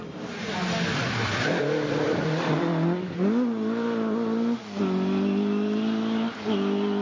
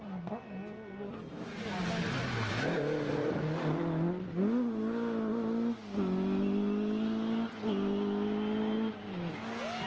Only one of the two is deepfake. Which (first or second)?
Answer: first